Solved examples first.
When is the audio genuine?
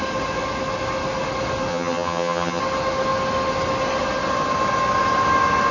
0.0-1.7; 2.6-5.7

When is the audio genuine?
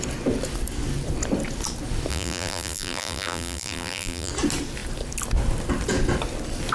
0.0-2.1; 4.3-6.7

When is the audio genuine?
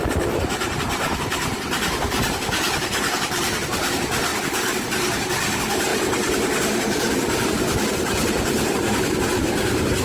0.0-0.5; 4.3-4.8